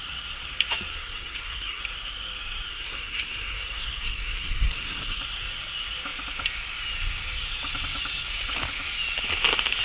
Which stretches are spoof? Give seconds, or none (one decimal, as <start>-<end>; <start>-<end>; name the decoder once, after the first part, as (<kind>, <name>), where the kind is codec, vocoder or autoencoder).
0.9-1.8 (codec, SNAC); 2.7-5.2